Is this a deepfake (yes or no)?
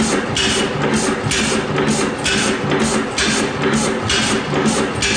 no